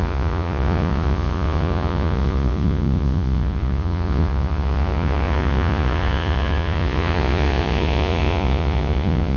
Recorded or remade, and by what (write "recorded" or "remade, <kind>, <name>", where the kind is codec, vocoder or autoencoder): remade, vocoder, Vocos